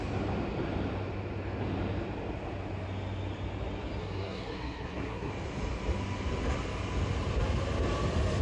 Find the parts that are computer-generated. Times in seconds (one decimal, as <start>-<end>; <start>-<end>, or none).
4.0-5.3

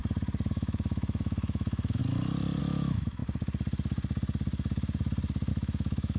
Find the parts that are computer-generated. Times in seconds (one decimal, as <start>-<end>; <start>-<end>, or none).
0.5-2.0; 2.6-3.2; 5.5-6.2

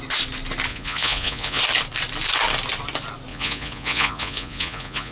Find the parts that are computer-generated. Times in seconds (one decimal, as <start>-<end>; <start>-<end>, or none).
0.7-1.6; 3.3-5.1

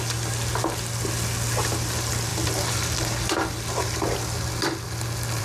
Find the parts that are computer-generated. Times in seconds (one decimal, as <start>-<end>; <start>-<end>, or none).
none

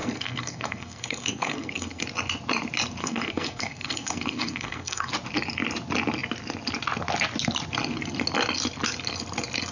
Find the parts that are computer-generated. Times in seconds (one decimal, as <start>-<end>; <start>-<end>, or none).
0.0-2.0; 3.0-5.1

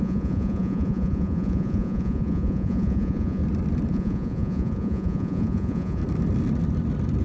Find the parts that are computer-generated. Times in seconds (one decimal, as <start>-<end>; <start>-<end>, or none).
0.0-3.4; 3.9-6.0

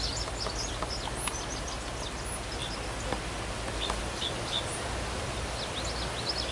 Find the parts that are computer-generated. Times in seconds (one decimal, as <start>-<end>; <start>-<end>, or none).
none